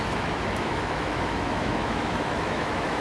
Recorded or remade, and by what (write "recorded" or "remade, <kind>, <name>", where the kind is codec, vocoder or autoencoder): remade, autoencoder, DAC-VAE